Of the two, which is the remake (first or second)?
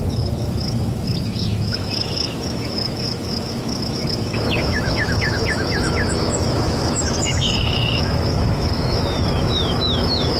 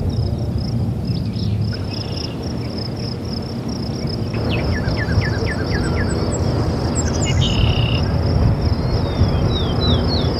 first